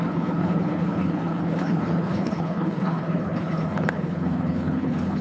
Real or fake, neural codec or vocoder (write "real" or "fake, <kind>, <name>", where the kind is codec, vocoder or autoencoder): fake, codec, HILCodec